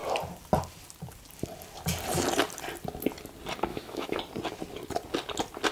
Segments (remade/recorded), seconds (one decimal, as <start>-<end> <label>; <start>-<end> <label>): 0.0-3.7 recorded; 3.7-4.2 remade; 4.2-5.7 recorded